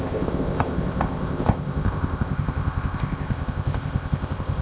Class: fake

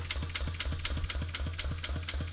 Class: real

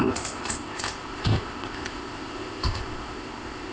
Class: fake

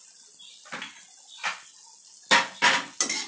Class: real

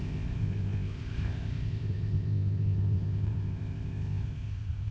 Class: fake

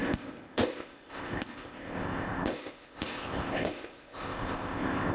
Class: fake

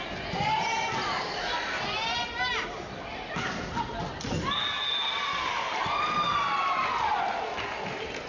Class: real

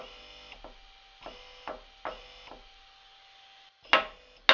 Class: real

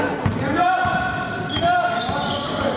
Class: real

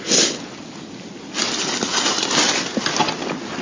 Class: real